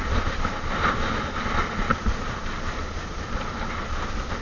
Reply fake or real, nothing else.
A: real